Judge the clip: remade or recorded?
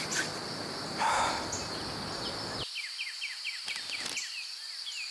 recorded